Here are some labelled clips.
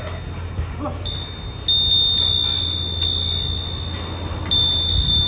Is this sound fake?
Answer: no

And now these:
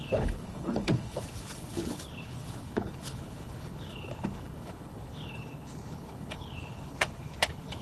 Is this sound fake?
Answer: yes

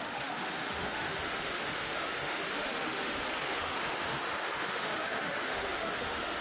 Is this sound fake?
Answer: yes